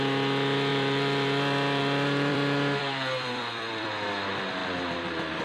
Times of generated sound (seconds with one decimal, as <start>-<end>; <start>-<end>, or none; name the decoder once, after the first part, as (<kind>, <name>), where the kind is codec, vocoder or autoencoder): 0.7-3.9 (vocoder, BigVGAN v2); 4.6-5.4